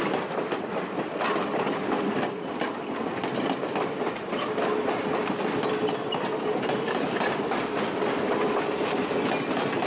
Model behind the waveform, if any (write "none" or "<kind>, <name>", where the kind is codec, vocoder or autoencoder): none